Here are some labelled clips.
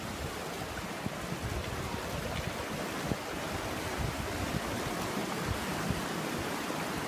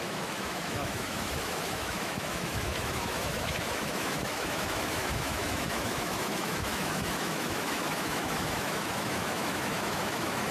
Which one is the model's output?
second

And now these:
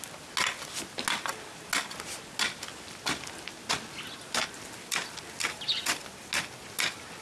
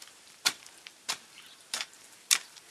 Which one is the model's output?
second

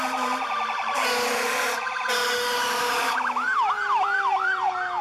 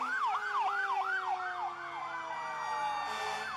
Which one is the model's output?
first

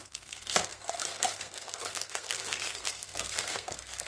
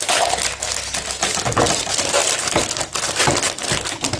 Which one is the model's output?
first